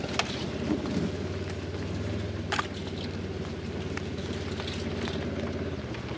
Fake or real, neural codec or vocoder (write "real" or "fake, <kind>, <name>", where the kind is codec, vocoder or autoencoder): real